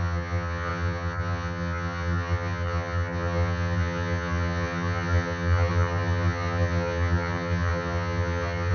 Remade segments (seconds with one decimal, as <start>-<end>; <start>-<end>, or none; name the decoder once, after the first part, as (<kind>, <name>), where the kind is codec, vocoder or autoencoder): 0.0-8.7 (vocoder, HiFi-GAN)

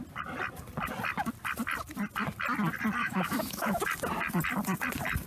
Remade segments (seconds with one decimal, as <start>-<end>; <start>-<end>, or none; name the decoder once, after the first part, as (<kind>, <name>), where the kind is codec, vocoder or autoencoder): 3.0-3.8 (autoencoder, DAC-VAE)

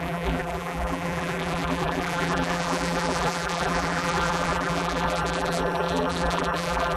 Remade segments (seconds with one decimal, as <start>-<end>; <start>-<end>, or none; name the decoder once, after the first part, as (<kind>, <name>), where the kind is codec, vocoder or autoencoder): 0.0-7.0 (vocoder, BigVGAN v2)

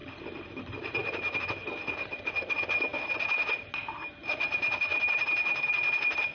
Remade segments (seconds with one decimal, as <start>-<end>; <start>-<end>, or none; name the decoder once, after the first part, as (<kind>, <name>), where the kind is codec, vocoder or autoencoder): 0.0-1.4 (vocoder, BigVGAN v2); 4.9-5.6

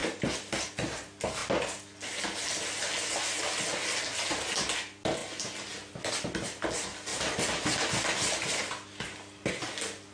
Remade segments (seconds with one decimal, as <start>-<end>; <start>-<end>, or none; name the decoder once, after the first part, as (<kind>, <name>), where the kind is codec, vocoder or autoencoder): none

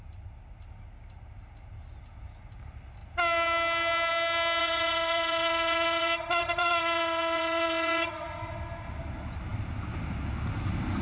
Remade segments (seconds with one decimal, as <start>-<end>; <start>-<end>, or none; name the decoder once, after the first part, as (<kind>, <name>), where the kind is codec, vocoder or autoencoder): 4.6-8.1 (vocoder, Vocos)

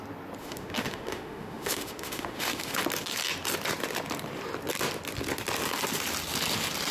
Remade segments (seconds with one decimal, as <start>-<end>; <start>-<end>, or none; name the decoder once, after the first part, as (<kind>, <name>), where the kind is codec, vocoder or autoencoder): 0.4-2.8 (autoencoder, DAC-VAE)

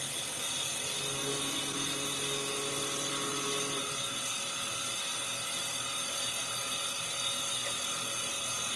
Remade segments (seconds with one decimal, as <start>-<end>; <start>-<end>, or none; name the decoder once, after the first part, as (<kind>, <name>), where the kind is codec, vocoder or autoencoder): 0.7-1.2 (vocoder, BigVGAN v2); 3.3-6.4; 7.6-8.4